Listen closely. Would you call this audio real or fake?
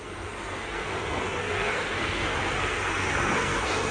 fake